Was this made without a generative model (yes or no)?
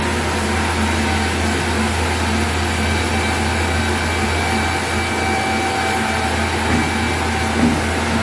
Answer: yes